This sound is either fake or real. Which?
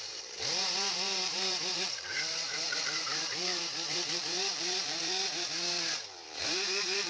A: fake